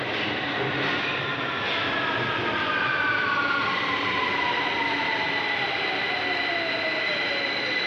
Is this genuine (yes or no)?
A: yes